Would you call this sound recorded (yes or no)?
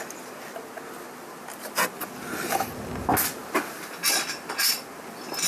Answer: yes